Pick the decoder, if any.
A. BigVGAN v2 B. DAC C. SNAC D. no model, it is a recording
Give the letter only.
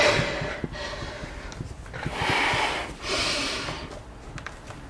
D